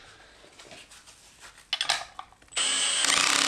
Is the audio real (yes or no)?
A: yes